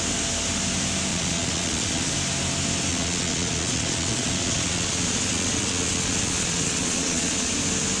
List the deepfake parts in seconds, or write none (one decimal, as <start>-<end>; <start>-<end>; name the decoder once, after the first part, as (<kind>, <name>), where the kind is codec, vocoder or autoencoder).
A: 1.1-2.1 (vocoder, Vocos); 2.9-7.5